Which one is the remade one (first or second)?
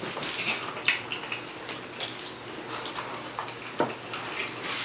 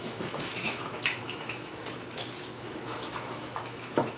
second